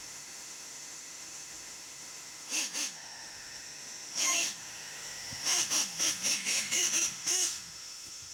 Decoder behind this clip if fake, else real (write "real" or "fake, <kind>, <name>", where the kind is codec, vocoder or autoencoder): fake, autoencoder, DAC-VAE